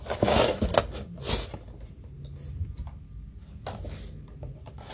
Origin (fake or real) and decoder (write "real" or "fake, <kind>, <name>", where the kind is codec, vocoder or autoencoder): real